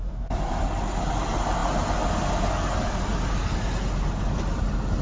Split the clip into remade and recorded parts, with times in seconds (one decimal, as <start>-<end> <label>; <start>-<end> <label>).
0.0-5.0 recorded